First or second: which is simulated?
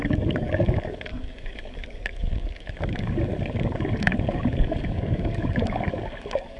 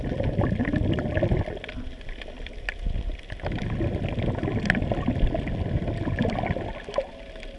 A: first